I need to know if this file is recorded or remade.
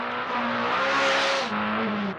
recorded